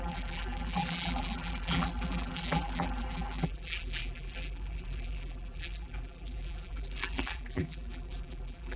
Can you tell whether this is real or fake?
fake